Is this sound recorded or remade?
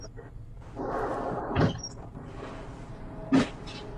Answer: recorded